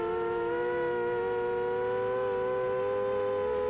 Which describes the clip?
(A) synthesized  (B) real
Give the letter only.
B